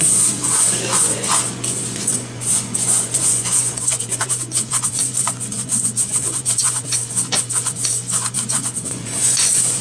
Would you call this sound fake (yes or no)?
yes